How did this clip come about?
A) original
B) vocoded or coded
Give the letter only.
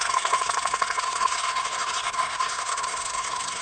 B